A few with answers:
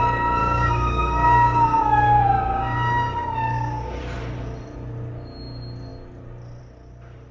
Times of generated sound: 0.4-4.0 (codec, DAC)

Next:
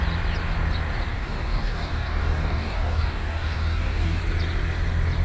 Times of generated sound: 1.1-4.2 (codec, DAC)

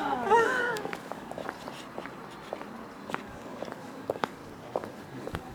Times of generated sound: 0.0-1.4 (codec, DAC); 3.1-4.4; 5.1-5.5

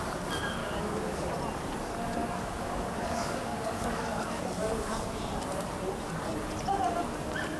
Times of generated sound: 0.6-1.3 (codec, DAC); 2.2-5.2